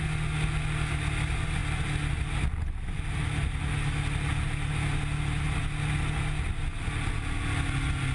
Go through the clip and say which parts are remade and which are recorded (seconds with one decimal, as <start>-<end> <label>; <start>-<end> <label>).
0.0-8.1 recorded